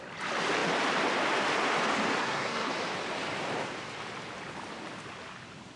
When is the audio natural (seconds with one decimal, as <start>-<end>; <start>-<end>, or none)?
0.0-2.2; 2.7-5.8